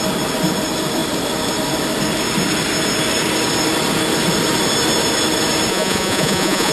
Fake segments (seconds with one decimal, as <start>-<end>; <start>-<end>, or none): 5.7-6.7